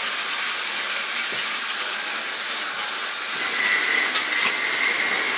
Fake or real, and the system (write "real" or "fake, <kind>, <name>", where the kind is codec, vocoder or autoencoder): real